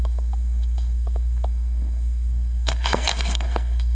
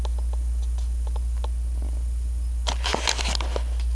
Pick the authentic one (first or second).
second